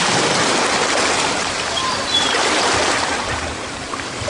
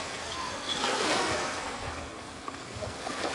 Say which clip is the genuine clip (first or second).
first